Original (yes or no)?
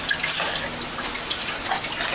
yes